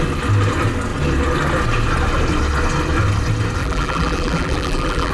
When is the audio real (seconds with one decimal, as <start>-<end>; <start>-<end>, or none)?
0.0-3.6